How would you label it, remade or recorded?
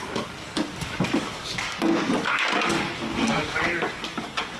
remade